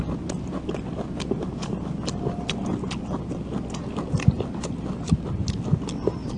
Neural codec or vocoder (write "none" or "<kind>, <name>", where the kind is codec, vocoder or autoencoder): none